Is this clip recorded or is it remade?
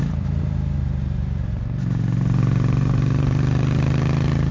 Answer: remade